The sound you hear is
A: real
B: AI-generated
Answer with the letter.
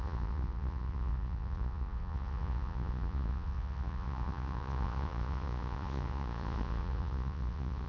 B